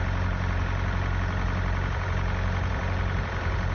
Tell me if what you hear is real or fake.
real